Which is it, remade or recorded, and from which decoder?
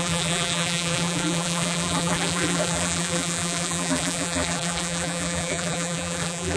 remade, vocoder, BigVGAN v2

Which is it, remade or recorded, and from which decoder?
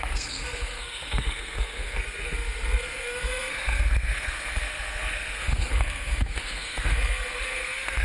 remade, codec, SNAC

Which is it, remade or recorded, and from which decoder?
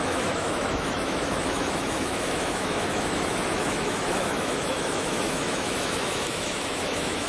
remade, autoencoder, DAC-VAE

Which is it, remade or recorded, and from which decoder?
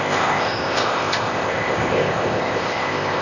remade, codec, ZipCodec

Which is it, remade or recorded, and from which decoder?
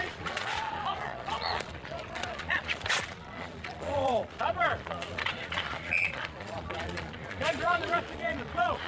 remade, vocoder, Vocos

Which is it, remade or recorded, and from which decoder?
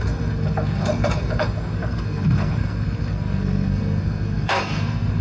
remade, codec, SNAC